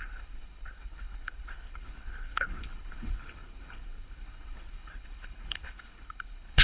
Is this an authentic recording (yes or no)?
no